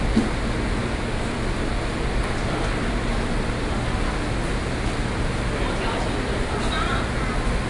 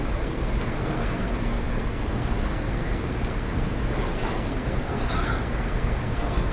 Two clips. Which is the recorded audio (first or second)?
first